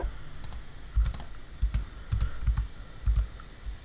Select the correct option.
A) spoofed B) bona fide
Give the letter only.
B